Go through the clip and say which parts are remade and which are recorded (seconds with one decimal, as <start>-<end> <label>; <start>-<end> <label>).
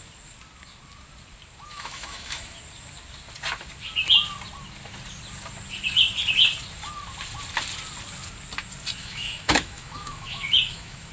0.0-1.7 recorded; 1.7-2.6 remade; 2.6-9.0 recorded; 9.0-11.1 remade